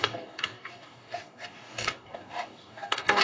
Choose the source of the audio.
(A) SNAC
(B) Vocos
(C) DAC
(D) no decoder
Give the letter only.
C